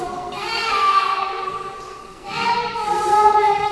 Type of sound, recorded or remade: remade